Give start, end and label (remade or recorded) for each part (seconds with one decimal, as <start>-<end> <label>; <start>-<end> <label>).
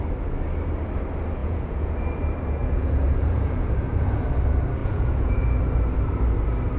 0.0-1.4 recorded; 1.4-1.9 remade; 1.9-2.6 recorded; 2.6-4.2 remade; 4.2-4.8 recorded; 4.8-5.6 remade; 5.6-6.8 recorded